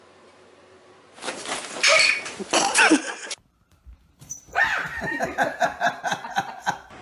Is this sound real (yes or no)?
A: no